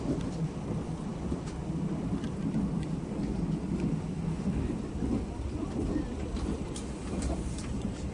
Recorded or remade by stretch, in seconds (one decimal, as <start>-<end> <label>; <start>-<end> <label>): 0.0-1.1 remade; 1.1-2.0 recorded; 2.0-8.1 remade